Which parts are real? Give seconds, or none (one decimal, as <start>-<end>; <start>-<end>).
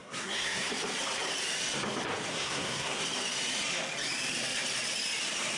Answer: 0.7-2.3; 3.0-5.6